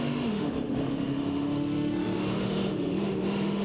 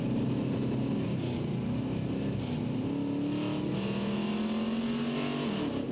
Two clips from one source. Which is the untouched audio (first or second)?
second